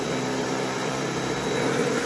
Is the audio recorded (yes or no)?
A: no